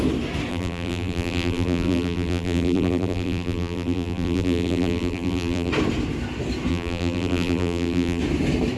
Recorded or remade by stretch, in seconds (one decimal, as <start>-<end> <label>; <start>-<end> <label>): 0.0-0.5 recorded; 0.5-5.7 remade; 5.7-6.7 recorded; 6.7-8.2 remade; 8.2-8.8 recorded